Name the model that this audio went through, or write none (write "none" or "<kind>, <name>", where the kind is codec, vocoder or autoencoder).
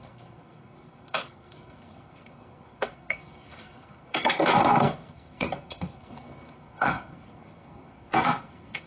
codec, SNAC